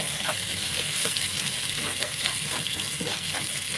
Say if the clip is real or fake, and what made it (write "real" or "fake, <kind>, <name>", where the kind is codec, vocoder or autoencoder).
fake, codec, SNAC